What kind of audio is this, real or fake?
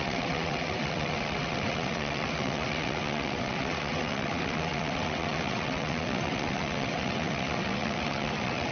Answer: fake